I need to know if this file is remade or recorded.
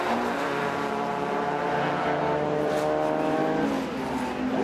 recorded